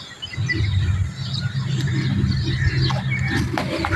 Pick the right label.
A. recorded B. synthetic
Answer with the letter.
A